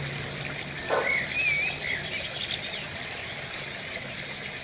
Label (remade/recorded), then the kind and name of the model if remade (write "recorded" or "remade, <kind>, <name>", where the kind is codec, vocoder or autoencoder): recorded